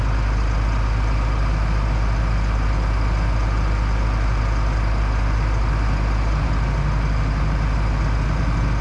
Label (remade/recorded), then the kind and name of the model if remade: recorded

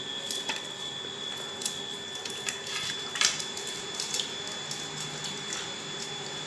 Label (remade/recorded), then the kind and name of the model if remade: recorded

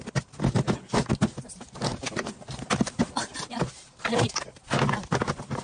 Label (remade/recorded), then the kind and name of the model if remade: recorded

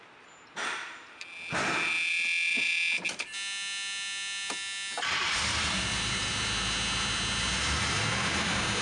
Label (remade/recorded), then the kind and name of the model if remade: recorded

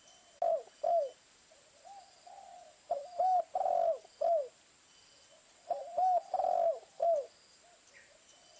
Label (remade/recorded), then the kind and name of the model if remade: recorded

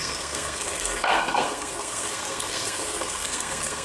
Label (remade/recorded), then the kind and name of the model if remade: remade, codec, SNAC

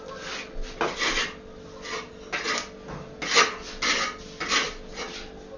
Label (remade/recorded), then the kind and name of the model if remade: recorded